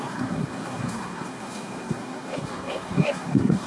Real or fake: fake